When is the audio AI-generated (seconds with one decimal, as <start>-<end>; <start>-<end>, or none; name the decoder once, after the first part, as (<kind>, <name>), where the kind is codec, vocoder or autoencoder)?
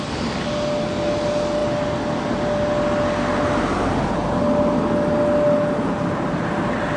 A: none